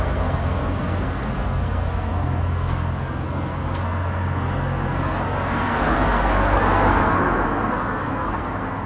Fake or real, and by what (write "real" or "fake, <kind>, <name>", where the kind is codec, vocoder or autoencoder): fake, codec, SNAC